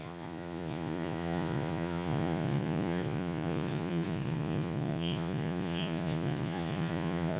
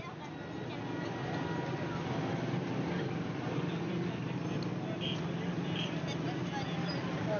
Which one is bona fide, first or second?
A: second